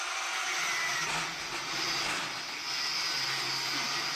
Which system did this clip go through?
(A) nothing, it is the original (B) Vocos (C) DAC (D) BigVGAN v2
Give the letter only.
A